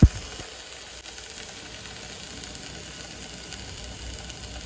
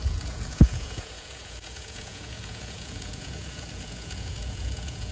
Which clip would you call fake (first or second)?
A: second